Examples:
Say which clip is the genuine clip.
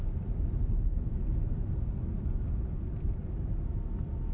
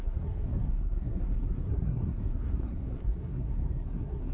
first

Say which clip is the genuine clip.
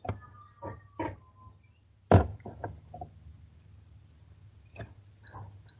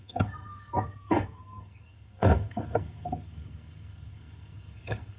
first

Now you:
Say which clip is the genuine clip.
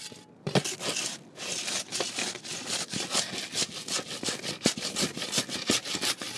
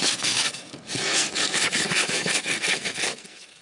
first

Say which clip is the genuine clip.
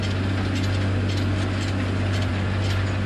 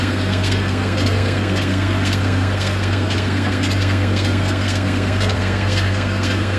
first